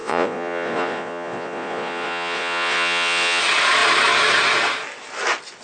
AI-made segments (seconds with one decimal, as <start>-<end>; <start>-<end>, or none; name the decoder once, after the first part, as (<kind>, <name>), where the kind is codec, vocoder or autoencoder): 0.0-3.4 (vocoder, Vocos)